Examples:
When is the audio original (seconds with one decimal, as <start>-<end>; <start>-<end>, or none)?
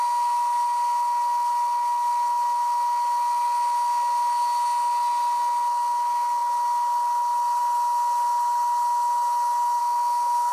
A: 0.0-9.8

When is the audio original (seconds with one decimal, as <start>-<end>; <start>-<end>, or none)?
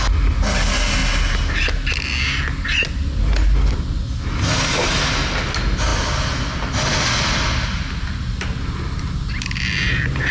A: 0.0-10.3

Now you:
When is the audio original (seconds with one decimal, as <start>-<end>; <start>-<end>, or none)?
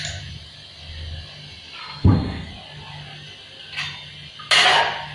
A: 0.0-1.8; 2.5-5.1